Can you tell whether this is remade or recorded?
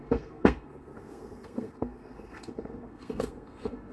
remade